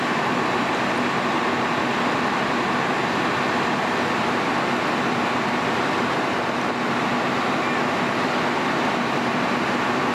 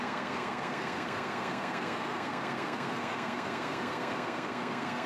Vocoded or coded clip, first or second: second